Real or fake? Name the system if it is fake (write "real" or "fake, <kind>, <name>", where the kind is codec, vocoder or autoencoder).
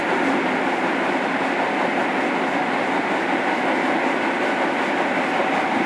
real